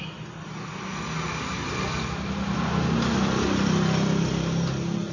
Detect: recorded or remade recorded